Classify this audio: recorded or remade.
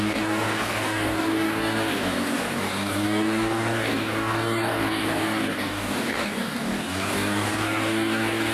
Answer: remade